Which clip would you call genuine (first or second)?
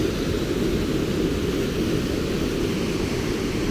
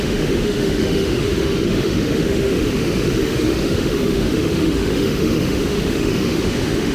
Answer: first